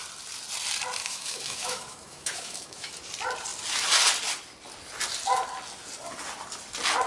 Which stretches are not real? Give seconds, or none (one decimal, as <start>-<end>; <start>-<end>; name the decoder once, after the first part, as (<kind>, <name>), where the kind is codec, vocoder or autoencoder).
1.0-2.9 (autoencoder, DAC-VAE)

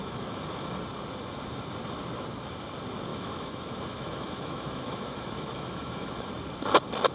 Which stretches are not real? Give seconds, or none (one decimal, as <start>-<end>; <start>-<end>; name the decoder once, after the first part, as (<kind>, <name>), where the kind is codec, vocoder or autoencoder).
0.0-0.8 (autoencoder, DAC-VAE); 3.1-6.3

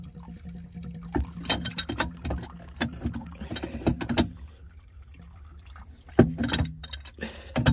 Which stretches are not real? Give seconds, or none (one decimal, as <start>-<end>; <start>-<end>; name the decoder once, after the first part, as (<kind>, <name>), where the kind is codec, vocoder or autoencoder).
none

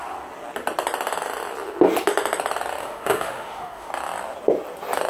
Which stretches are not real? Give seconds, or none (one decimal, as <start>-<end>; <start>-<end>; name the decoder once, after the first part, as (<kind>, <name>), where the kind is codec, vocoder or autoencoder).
2.8-3.9 (autoencoder, DAC-VAE)